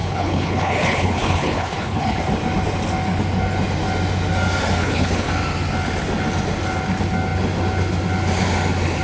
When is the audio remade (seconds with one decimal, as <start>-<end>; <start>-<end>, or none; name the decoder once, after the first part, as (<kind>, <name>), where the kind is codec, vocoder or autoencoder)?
0.0-2.2 (codec, HILCodec); 4.8-5.3